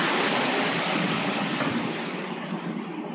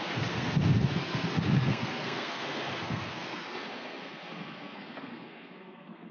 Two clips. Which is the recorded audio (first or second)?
first